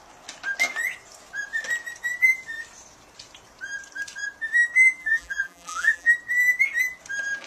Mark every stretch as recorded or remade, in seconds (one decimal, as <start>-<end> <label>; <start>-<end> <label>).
0.0-5.0 recorded; 5.0-6.1 remade; 6.1-7.5 recorded